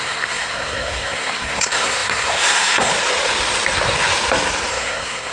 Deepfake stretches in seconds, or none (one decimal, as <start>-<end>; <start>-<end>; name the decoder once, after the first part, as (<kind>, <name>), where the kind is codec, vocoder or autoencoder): 0.0-2.9 (codec, SNAC); 4.7-5.3